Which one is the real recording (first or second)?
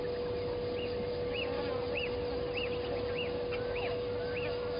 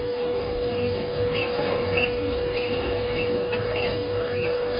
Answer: first